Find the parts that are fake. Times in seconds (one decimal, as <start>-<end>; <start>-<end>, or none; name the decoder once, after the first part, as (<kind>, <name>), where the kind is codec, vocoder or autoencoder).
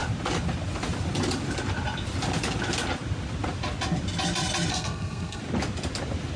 4.7-5.4 (codec, SNAC)